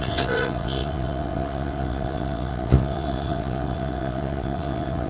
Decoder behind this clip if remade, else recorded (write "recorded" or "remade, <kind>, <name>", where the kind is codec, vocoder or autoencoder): remade, vocoder, WaveNeXt